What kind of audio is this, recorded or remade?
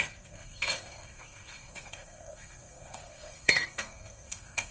remade